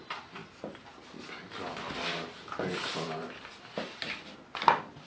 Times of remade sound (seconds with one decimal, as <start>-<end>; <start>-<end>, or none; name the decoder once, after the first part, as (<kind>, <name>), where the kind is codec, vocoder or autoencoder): none